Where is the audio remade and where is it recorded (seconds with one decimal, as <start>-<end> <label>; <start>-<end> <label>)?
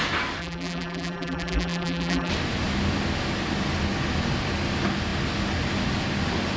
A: 0.0-0.4 recorded; 0.4-2.3 remade; 2.3-6.6 recorded